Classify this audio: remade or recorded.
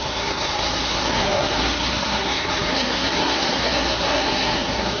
remade